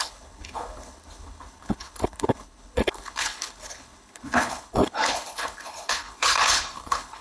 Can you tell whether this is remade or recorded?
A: remade